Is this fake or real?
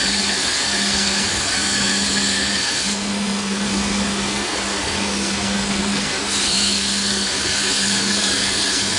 fake